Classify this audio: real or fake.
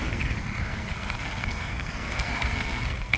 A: fake